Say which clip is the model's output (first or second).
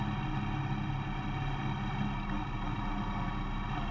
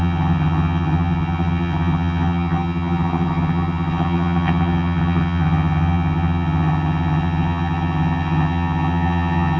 second